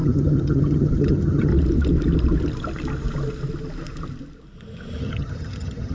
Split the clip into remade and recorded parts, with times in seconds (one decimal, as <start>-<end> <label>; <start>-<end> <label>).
0.0-1.5 remade; 1.5-5.0 recorded; 5.0-5.9 remade